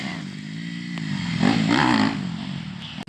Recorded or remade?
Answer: recorded